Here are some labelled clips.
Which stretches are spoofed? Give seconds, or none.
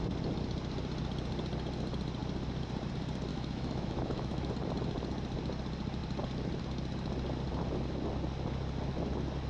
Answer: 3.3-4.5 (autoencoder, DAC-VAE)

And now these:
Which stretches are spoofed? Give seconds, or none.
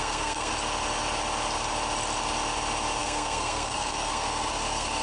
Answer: 0.0-0.5 (codec, SNAC); 3.0-5.0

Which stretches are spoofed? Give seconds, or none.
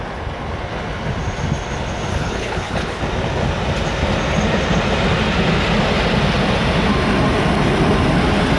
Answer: 2.1-3.0 (codec, HILCodec)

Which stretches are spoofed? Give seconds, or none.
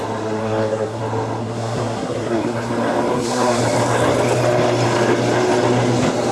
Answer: 0.4-1.0 (codec, SNAC); 1.4-2.7; 3.1-3.6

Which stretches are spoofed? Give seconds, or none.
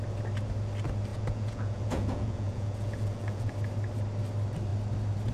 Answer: 1.1-3.5 (vocoder, Vocos)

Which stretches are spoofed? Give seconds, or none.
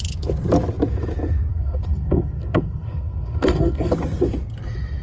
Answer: 1.5-3.9 (codec, SNAC)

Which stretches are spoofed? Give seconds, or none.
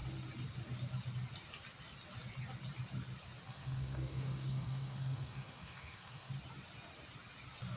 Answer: 3.5-6.3 (codec, SNAC)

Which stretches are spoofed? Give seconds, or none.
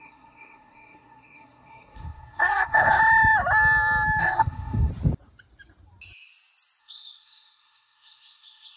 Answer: 0.0-3.0 (codec, SNAC); 4.2-4.9; 6.8-8.8